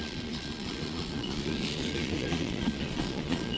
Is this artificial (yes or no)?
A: yes